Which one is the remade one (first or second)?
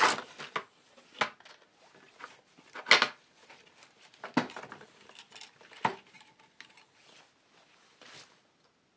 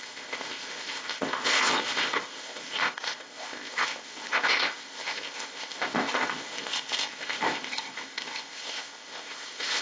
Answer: second